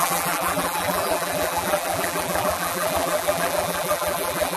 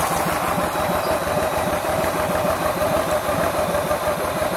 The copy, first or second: first